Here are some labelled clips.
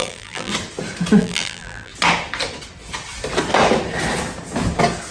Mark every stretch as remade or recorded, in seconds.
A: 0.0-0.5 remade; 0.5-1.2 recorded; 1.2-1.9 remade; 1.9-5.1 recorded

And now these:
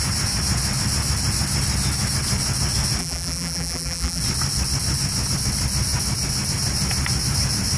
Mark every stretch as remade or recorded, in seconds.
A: 0.0-3.0 recorded; 3.0-4.2 remade; 4.2-7.8 recorded

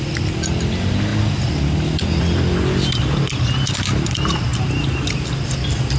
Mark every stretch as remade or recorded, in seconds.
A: 0.0-6.0 recorded

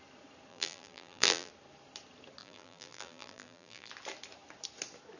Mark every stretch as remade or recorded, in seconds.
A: 0.0-0.5 recorded; 0.5-1.5 remade; 1.5-2.4 recorded; 2.4-3.9 remade; 3.9-5.2 recorded

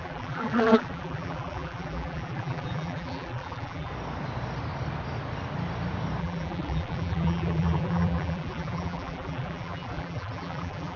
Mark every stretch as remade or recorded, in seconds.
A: 0.0-3.9 remade; 3.9-6.2 recorded; 6.2-11.0 remade

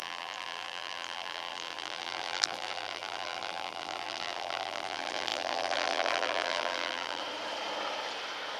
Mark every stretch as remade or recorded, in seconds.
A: 0.0-7.2 remade; 7.2-8.6 recorded